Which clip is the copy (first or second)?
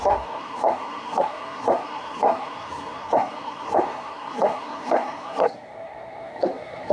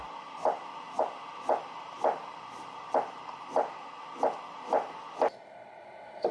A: first